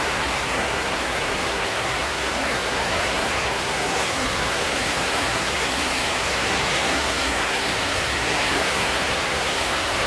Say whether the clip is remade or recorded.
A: remade